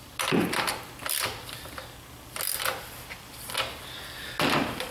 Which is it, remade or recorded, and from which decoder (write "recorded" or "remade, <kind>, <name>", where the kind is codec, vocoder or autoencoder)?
recorded